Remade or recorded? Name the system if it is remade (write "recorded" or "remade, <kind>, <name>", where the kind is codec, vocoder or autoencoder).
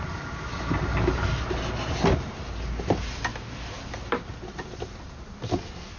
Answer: recorded